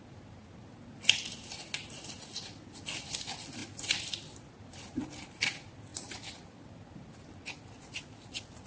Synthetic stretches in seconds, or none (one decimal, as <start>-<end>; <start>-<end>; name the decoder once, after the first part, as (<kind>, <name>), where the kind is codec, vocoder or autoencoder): none